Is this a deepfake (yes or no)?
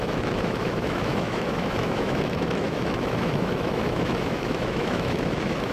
yes